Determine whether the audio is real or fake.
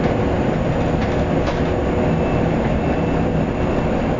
real